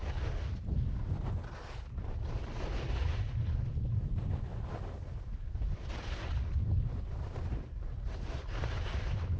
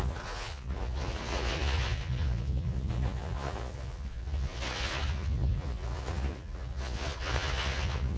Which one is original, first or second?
first